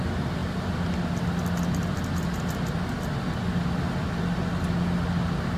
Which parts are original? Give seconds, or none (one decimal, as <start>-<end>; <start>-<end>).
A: 0.0-5.6